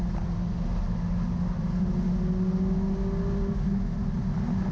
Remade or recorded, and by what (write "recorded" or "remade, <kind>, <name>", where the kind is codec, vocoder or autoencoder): recorded